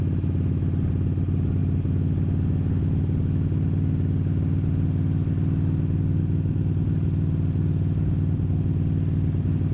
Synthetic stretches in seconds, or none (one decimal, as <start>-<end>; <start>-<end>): none